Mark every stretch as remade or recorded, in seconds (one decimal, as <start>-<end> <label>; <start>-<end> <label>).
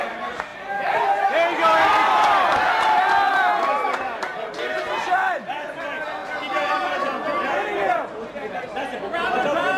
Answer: 0.0-9.8 recorded